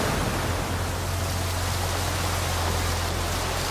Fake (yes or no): no